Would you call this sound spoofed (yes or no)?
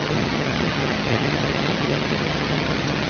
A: yes